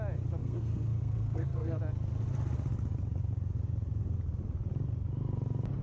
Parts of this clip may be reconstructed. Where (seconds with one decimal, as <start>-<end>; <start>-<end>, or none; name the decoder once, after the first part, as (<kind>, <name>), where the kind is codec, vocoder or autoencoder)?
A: 0.4-1.8 (codec, SNAC)